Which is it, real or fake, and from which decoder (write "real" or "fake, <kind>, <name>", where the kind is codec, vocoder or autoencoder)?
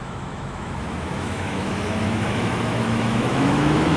fake, autoencoder, DAC-VAE